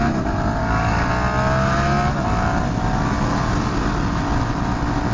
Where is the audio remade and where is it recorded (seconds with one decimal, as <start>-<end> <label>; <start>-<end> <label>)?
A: 0.0-0.6 recorded; 0.6-1.1 remade; 1.1-5.1 recorded